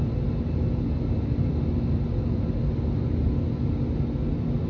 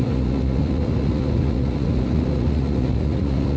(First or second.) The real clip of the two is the first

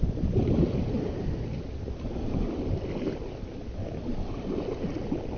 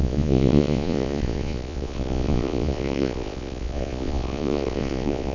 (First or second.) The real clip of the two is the first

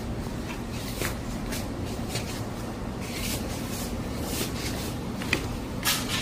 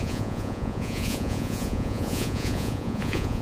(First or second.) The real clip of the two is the first